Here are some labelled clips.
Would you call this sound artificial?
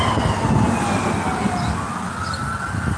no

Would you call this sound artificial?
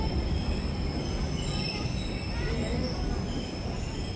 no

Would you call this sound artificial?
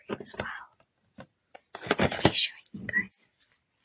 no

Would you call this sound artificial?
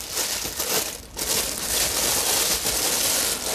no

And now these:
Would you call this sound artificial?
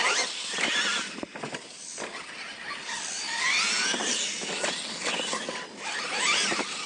no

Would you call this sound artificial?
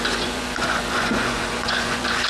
yes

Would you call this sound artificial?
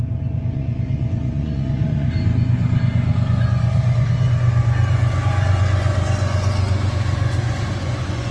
yes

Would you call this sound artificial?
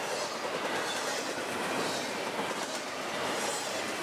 no